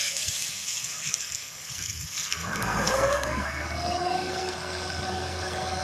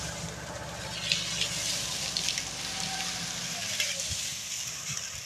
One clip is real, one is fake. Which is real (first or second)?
second